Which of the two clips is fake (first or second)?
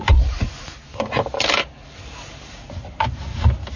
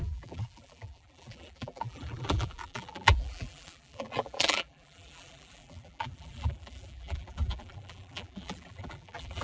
second